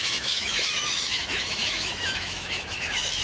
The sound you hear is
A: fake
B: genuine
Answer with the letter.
A